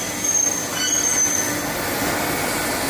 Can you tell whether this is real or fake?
real